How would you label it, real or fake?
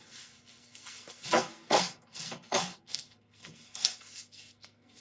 fake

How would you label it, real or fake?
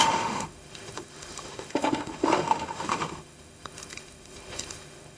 fake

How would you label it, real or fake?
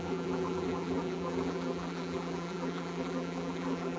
fake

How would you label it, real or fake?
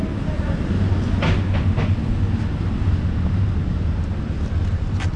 real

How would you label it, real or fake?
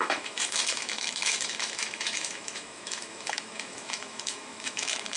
fake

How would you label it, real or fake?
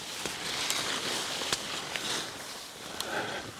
real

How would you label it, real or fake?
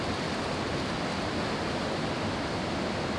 real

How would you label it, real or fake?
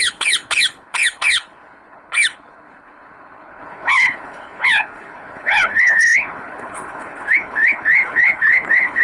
fake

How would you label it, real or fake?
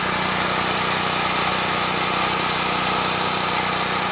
real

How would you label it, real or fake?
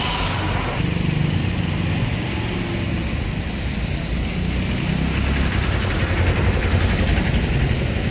real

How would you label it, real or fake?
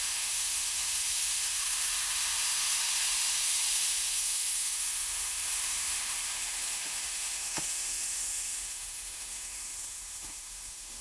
fake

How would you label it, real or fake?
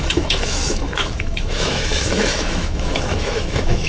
fake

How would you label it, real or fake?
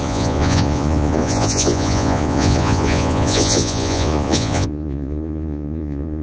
fake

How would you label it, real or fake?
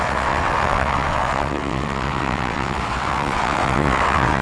fake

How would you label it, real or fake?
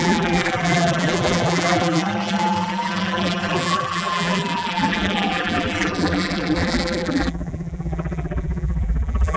fake